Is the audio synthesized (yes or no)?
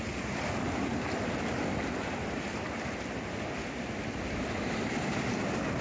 no